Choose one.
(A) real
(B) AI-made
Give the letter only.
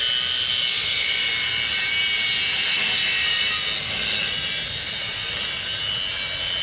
A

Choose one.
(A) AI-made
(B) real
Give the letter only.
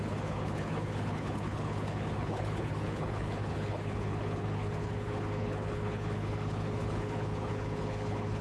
A